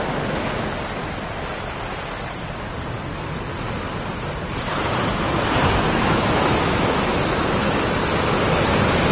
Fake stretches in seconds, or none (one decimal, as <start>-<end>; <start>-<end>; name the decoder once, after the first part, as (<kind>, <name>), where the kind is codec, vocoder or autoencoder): 6.0-7.9 (autoencoder, DAC-VAE)